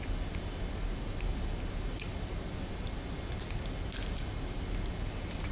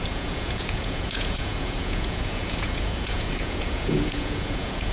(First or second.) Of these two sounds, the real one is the first